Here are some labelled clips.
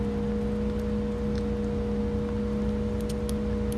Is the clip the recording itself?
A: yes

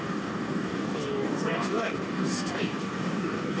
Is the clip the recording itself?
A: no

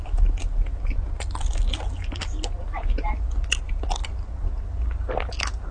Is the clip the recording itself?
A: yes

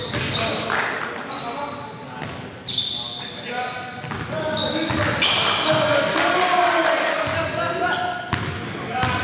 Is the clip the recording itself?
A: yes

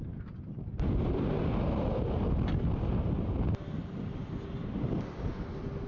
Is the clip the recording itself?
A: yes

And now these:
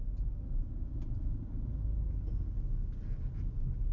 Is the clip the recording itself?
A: yes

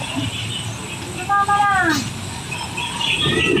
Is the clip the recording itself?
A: yes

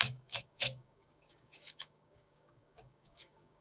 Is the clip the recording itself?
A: no